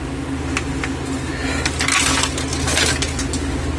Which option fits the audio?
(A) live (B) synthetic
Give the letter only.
A